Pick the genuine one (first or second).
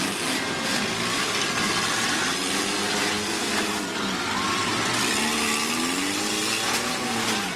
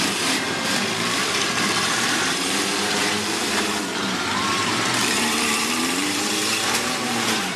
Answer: first